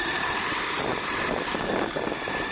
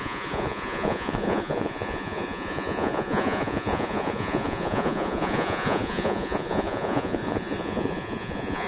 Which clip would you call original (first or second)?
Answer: first